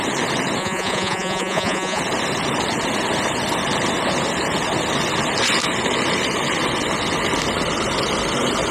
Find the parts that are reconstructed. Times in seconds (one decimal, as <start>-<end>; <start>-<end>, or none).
0.6-2.0